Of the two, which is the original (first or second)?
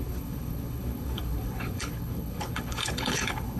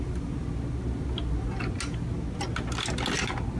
second